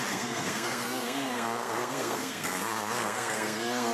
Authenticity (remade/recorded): remade